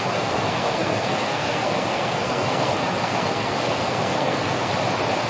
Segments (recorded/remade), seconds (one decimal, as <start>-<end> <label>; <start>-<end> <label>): 0.0-4.7 remade; 4.7-5.3 recorded